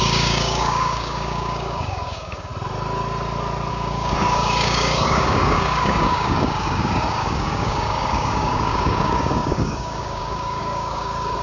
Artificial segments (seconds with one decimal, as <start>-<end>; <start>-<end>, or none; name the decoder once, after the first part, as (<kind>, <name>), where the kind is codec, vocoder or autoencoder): 0.0-2.5 (codec, DAC); 3.7-11.4